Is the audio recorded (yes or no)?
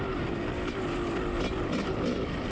yes